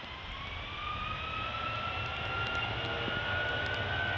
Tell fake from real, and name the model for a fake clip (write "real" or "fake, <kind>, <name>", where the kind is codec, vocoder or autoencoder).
real